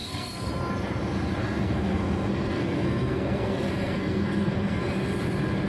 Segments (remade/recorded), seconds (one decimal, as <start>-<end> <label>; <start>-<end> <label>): 0.0-0.5 remade; 0.5-1.4 recorded; 1.4-4.8 remade; 4.8-5.7 recorded